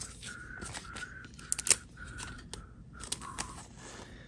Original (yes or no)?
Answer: yes